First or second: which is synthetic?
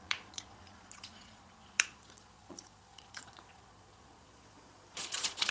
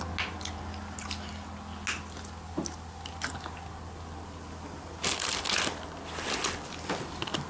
first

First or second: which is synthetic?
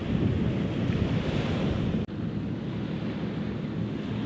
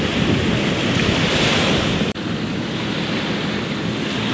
second